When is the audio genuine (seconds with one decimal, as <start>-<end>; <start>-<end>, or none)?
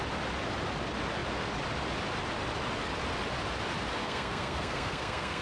0.0-4.0